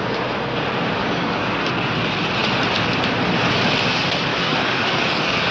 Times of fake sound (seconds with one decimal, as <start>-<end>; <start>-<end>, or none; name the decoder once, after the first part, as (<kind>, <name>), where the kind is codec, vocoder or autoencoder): 1.0-1.6 (codec, DAC); 4.3-5.5